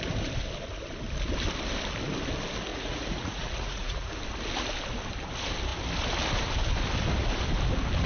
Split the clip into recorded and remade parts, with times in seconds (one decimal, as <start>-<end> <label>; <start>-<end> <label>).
0.0-2.7 recorded; 2.7-4.1 remade; 4.1-8.1 recorded